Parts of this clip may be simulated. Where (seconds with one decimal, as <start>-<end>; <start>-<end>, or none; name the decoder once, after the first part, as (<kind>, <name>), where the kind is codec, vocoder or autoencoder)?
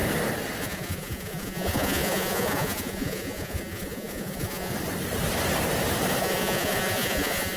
0.6-4.7 (vocoder, Vocos); 6.2-7.6